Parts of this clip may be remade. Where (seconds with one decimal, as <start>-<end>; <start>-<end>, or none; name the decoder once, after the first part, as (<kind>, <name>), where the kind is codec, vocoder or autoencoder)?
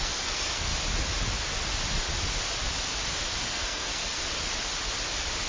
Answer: 0.0-0.7 (codec, SNAC); 3.4-4.2